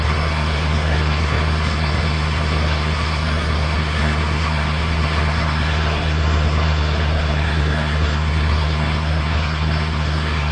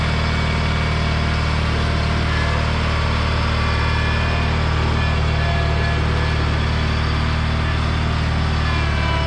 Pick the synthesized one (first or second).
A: first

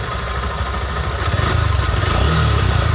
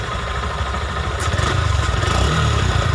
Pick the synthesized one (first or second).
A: second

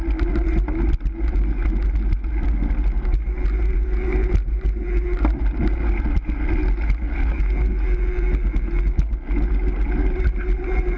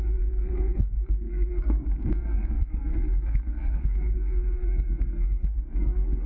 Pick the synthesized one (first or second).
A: second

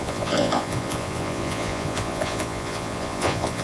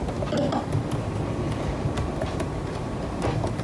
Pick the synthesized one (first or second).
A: first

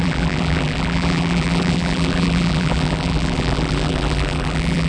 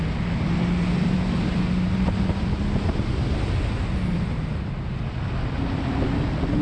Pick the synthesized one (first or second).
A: first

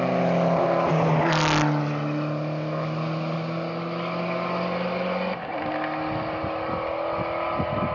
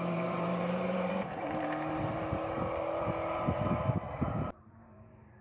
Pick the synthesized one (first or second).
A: second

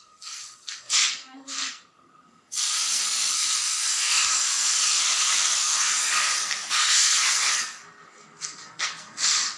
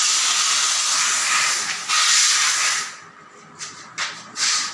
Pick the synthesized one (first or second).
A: first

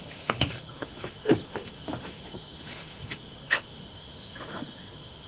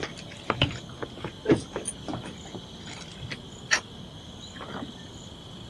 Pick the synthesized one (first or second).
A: first